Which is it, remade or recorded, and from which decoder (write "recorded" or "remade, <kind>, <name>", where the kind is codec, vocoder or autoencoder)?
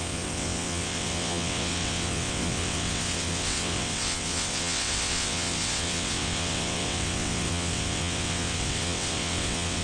remade, vocoder, WaveNeXt